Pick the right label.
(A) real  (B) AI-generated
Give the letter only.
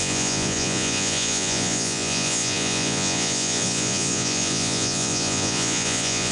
B